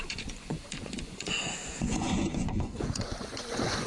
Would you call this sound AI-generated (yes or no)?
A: yes